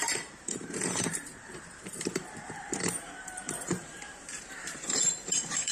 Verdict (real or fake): fake